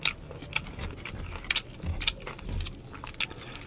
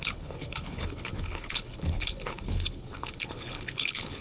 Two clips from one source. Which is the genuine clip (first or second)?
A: first